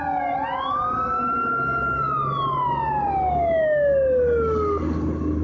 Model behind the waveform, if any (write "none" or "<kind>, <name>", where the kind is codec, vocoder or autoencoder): none